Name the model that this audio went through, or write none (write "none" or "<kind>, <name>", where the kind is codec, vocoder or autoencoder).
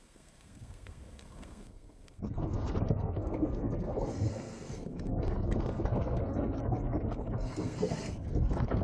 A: codec, SNAC